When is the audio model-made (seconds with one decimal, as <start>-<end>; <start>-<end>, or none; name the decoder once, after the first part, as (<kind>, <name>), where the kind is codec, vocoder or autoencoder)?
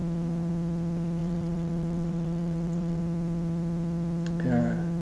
1.2-3.0 (vocoder, WaveNeXt)